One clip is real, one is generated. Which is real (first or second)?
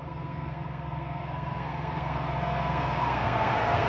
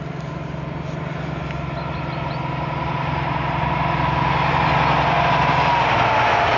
second